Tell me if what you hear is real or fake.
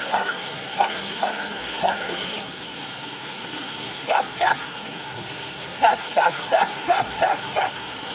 fake